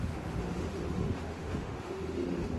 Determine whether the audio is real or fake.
fake